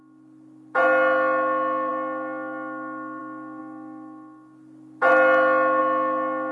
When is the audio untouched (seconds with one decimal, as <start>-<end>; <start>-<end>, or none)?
0.0-6.5